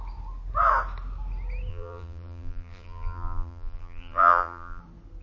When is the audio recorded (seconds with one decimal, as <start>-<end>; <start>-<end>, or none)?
0.0-1.7; 4.8-5.2